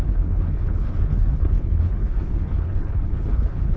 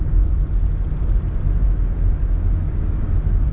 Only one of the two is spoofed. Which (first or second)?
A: first